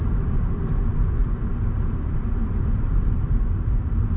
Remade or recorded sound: remade